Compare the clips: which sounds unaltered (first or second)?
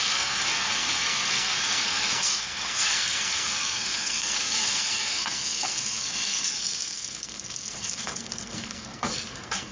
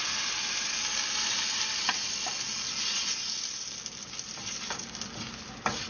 second